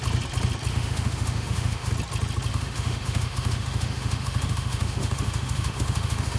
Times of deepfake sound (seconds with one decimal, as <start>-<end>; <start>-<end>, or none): 0.7-1.9; 2.5-6.4